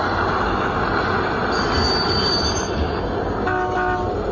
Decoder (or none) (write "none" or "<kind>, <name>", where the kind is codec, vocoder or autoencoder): none